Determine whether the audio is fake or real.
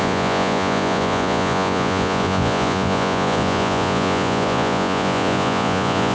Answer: fake